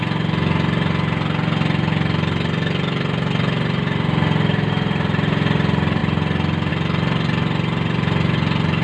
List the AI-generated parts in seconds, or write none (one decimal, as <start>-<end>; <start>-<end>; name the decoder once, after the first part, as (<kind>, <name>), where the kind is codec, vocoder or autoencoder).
none